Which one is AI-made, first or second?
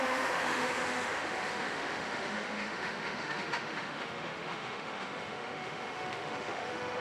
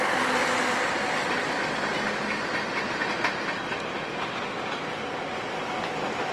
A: first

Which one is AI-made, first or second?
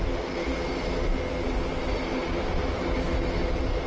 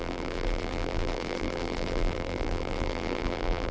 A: second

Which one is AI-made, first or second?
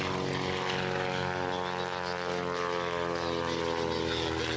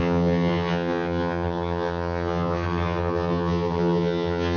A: second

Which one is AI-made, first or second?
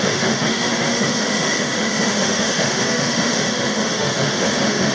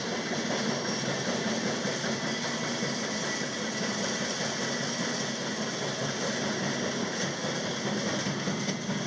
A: first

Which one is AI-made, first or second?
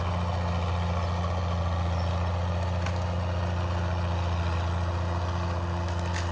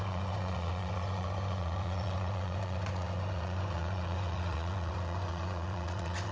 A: second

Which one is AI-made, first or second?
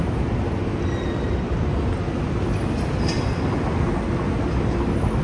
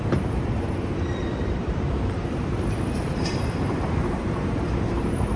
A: second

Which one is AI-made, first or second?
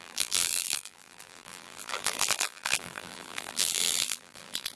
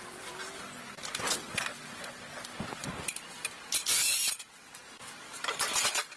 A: first